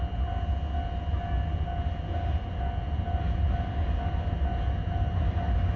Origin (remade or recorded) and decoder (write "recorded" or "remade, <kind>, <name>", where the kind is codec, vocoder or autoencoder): recorded